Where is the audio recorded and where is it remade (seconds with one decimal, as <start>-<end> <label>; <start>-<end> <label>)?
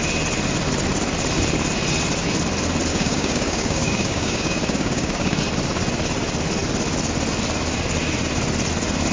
0.0-2.9 recorded; 2.9-5.4 remade; 5.4-9.1 recorded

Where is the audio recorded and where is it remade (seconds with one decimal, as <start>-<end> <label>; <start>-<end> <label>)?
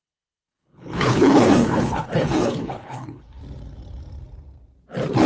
0.0-3.4 remade; 3.4-5.3 recorded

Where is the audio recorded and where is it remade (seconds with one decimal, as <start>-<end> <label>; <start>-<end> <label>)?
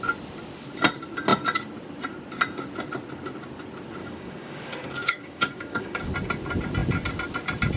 0.0-4.0 recorded; 4.0-6.1 remade; 6.1-7.8 recorded